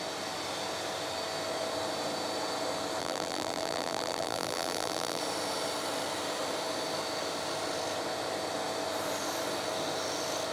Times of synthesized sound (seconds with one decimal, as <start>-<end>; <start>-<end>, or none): 3.0-5.2